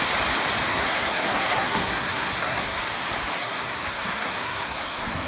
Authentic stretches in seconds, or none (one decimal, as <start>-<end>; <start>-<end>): 0.0-0.7; 2.8-3.4